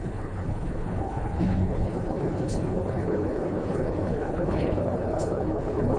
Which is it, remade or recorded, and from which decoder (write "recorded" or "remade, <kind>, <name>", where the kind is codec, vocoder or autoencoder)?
remade, codec, HILCodec